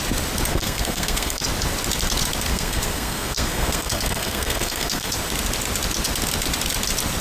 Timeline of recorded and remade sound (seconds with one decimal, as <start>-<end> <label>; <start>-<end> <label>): 0.0-0.5 recorded; 0.5-1.4 remade; 1.4-2.5 recorded; 2.5-5.1 remade; 5.1-7.2 recorded